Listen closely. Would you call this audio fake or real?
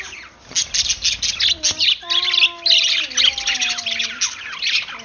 real